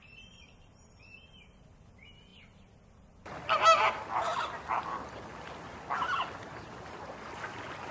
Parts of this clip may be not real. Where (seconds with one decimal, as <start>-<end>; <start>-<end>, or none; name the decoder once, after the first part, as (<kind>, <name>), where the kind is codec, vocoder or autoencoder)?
none